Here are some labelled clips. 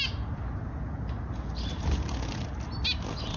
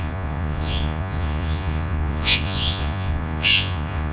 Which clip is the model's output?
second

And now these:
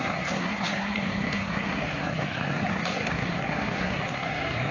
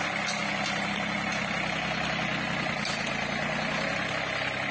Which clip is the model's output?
first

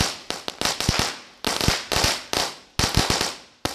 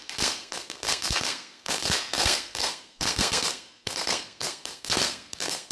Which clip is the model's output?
second